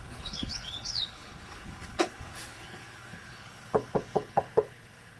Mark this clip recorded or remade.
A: remade